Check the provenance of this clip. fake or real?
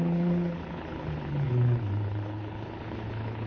fake